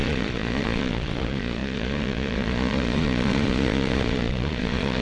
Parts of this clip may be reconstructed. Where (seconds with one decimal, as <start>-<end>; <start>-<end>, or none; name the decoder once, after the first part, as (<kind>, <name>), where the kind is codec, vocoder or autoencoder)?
0.0-5.0 (vocoder, Vocos)